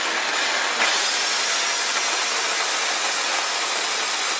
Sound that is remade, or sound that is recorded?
recorded